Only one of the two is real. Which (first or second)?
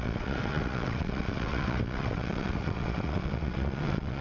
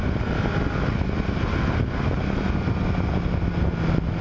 second